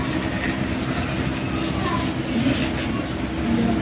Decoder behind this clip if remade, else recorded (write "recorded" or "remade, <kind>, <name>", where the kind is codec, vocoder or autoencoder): recorded